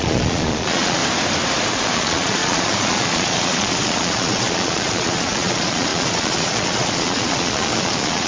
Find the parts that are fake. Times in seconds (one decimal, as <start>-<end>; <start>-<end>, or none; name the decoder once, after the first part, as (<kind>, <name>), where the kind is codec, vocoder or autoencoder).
0.0-1.0 (vocoder, Vocos); 1.7-8.3

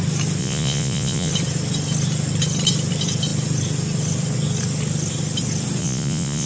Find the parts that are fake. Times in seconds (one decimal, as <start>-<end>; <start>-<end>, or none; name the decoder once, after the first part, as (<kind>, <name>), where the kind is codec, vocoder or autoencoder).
0.4-1.3 (vocoder, Vocos); 5.8-6.5

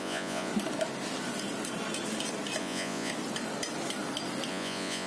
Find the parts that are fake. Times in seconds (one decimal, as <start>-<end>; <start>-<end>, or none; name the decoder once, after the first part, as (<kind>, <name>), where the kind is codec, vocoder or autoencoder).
0.0-0.5 (vocoder, Vocos); 2.6-3.1; 4.5-5.1

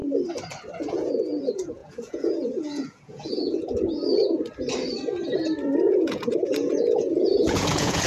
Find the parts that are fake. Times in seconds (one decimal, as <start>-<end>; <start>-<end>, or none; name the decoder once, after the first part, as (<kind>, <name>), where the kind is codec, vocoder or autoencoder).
0.9-4.1 (vocoder, Vocos); 5.9-8.1